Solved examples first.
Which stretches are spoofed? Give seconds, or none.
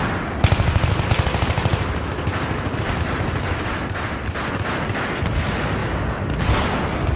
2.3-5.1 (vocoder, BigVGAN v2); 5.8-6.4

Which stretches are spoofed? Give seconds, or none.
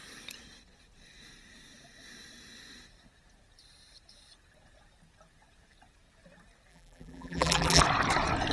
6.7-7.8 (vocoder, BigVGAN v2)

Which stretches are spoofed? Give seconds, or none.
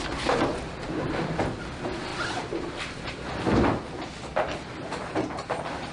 none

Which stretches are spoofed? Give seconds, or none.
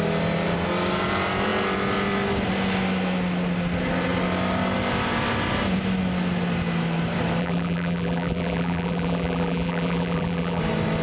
7.4-10.6 (vocoder, BigVGAN v2)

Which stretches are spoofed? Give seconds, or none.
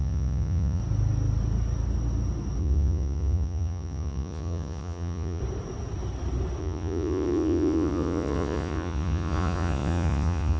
0.0-0.8 (vocoder, Vocos); 2.6-5.4; 6.6-10.6